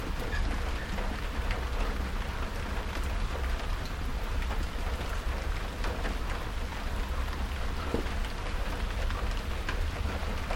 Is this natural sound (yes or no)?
yes